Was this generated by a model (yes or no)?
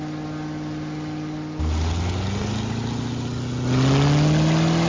no